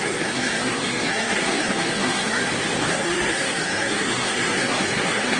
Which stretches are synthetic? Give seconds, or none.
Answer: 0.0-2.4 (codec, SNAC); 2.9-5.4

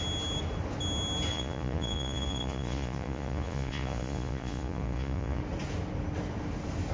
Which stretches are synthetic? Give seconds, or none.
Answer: 1.3-5.4 (vocoder, Vocos)

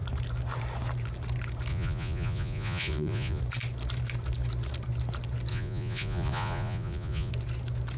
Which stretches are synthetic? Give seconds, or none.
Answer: 1.7-3.4 (vocoder, Vocos); 5.5-7.3

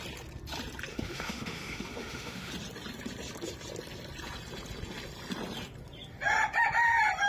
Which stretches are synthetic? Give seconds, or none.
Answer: 0.9-2.5 (autoencoder, DAC-VAE)